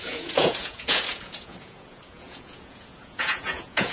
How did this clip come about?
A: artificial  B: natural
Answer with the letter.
A